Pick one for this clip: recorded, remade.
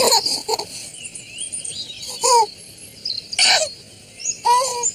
recorded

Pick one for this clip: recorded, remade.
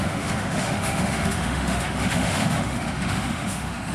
remade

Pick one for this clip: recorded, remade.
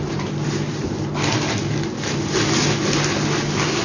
recorded